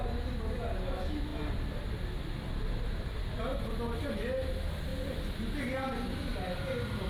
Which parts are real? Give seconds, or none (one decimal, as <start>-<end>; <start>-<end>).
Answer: 0.0-7.1